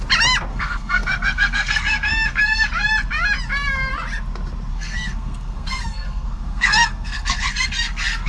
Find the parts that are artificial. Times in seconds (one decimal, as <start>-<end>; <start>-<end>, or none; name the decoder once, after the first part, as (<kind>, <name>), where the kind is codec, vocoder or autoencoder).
0.5-2.7 (codec, SNAC); 4.7-8.3